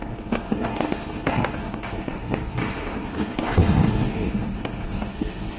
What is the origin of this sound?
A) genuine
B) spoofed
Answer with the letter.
B